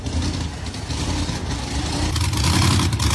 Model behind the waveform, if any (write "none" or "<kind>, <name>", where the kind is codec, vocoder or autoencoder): none